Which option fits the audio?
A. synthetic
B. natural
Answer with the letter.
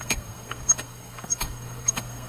A